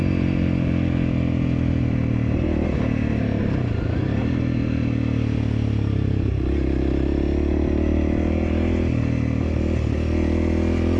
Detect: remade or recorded recorded